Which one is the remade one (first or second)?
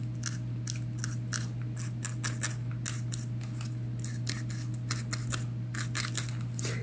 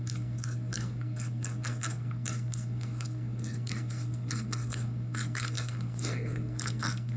second